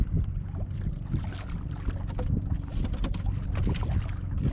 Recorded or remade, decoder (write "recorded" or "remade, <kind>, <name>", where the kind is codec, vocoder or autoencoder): recorded